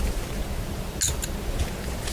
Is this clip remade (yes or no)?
no